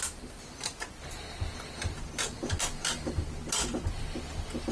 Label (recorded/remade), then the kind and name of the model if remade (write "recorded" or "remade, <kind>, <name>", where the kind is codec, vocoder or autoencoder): recorded